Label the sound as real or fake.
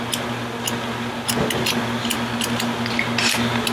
real